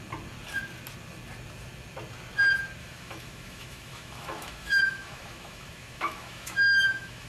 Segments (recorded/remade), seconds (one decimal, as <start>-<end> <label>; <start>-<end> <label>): 0.0-2.8 recorded; 2.8-7.3 remade